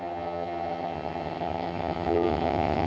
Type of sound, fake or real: fake